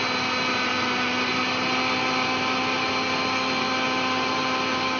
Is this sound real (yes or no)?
yes